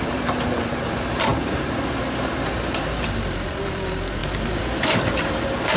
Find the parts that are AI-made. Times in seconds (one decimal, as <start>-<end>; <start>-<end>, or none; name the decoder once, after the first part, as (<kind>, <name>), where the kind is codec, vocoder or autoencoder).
0.0-5.8 (vocoder, BigVGAN v2)